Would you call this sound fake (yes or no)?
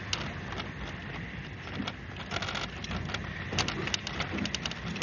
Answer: no